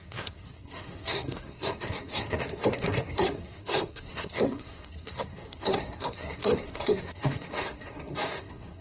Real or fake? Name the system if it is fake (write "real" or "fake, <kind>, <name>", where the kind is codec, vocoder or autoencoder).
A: fake, codec, SNAC